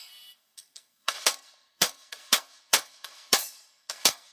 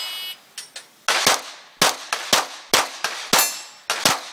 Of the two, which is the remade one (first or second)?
first